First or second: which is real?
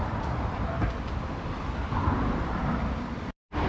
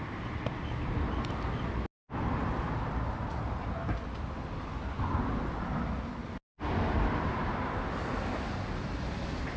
second